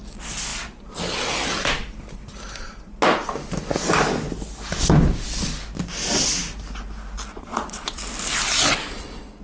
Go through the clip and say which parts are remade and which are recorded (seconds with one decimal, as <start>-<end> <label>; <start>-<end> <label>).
0.0-7.3 recorded; 7.3-8.0 remade; 8.0-9.4 recorded